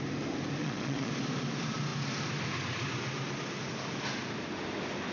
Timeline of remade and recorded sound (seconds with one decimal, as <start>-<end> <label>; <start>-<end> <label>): 0.0-0.6 recorded; 0.6-1.1 remade; 1.1-5.1 recorded